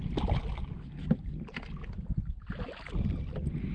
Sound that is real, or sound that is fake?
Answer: real